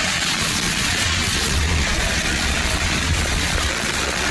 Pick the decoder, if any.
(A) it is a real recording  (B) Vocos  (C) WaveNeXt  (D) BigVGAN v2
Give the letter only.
B